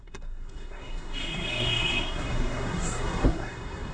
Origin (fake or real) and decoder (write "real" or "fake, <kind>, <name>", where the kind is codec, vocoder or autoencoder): fake, codec, SNAC